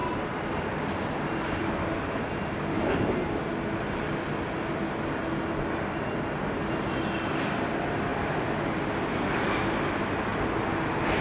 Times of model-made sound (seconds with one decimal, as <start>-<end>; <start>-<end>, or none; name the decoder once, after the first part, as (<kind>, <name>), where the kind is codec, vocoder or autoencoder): 0.0-1.9 (vocoder, BigVGAN v2); 8.1-9.6